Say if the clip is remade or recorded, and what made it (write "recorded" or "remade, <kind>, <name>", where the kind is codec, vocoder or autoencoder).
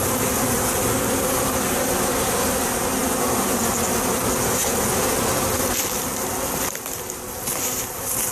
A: recorded